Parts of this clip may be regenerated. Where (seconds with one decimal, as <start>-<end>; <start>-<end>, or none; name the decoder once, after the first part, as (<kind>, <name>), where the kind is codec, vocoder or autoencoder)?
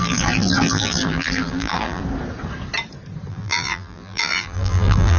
0.0-2.0 (vocoder, BigVGAN v2); 3.3-5.2